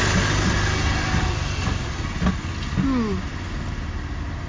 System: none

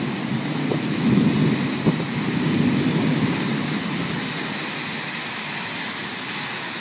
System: none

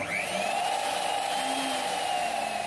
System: none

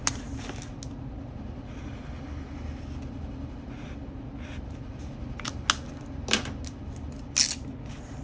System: none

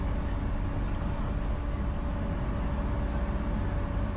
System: none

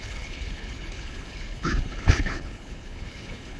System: codec, HILCodec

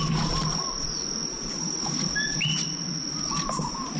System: none